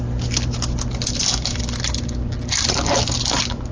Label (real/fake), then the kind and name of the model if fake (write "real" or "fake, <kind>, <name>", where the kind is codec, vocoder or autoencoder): real